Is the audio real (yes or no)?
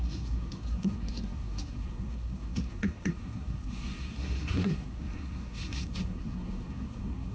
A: no